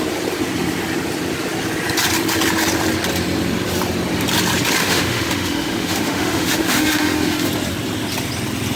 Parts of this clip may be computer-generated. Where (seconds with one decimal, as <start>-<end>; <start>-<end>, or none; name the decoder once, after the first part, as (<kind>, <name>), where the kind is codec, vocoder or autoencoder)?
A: 4.8-7.5 (autoencoder, DAC-VAE)